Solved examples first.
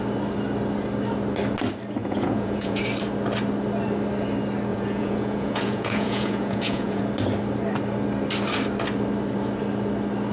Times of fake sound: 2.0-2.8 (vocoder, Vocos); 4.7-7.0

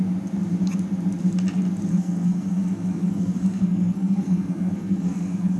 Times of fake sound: 1.9-5.6 (codec, SNAC)